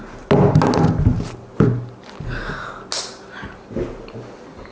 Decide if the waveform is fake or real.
real